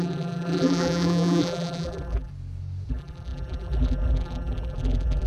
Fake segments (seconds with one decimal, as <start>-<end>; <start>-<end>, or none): 0.0-2.3; 2.9-5.3